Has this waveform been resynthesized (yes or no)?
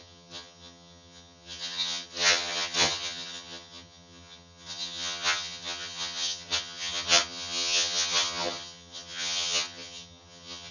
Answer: yes